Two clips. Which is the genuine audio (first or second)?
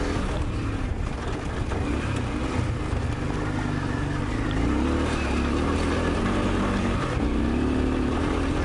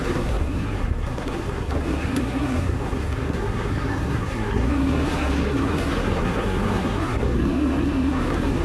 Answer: first